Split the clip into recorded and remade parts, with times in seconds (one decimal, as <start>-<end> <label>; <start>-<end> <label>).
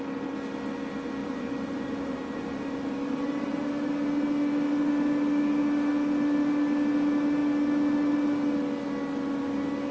0.0-1.2 recorded; 1.2-3.9 remade; 3.9-9.9 recorded